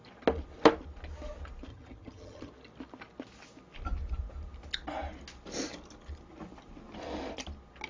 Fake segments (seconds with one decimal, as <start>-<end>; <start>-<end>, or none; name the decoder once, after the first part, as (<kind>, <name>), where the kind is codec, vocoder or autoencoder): 1.7-2.5 (vocoder, HiFi-GAN)